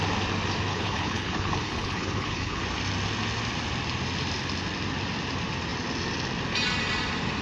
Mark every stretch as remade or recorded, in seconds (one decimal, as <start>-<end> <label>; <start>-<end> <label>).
0.0-0.7 recorded; 0.7-2.6 remade; 2.6-7.4 recorded